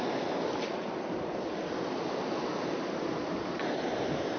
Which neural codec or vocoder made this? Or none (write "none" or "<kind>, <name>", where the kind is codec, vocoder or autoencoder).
none